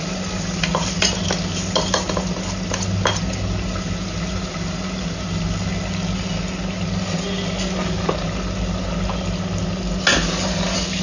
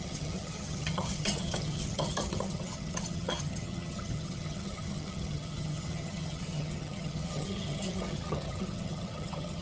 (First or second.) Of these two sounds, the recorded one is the first